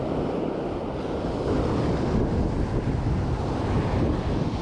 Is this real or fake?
real